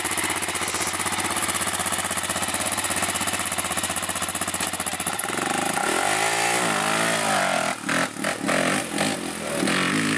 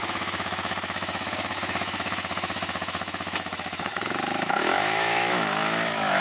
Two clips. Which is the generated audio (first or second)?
second